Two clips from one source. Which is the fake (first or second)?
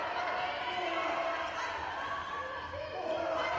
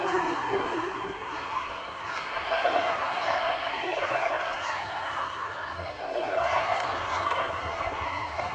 second